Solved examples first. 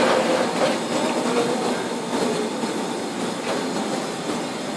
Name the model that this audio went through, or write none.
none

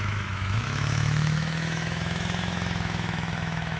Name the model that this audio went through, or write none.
autoencoder, DAC-VAE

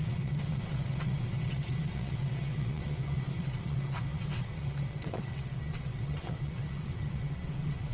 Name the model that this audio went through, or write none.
vocoder, WaveNeXt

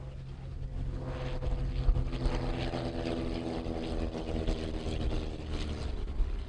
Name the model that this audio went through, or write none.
none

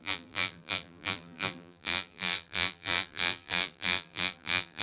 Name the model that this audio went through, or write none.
vocoder, BigVGAN v2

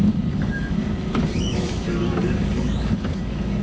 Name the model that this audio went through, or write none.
codec, DAC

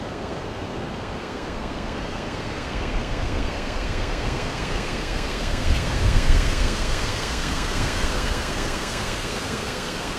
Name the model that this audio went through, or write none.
codec, SNAC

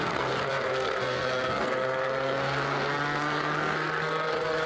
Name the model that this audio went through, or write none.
codec, SNAC